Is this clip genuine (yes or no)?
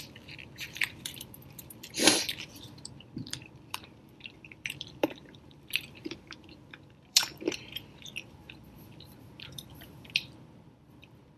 no